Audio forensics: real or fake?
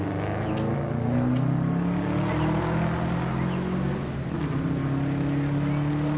real